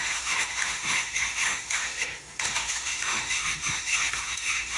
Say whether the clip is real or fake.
fake